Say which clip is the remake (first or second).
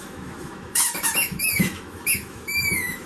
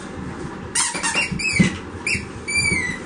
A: first